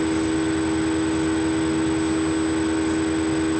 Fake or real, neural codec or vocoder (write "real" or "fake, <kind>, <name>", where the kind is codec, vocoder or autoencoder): real